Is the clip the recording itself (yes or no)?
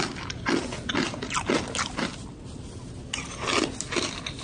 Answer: yes